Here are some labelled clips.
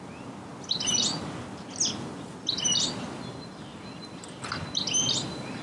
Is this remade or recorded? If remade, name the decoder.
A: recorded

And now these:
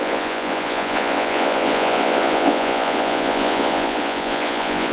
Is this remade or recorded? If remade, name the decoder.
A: remade, vocoder, Vocos